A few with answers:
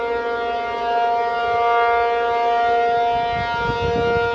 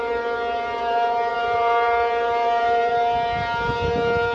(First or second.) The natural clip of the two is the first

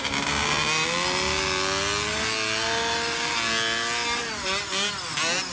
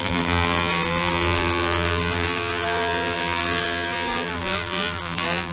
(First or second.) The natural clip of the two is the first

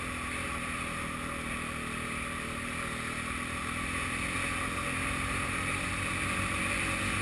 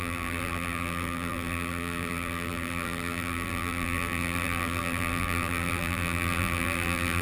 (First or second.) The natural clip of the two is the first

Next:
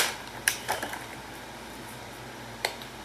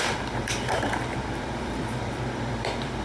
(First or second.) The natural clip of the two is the first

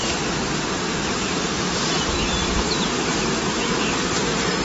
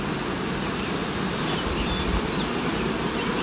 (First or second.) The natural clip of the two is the second